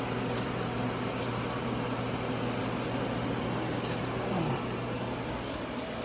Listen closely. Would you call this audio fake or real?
real